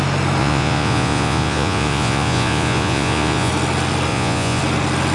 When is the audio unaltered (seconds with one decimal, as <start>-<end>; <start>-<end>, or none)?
0.0-0.4; 3.5-4.1; 4.6-5.1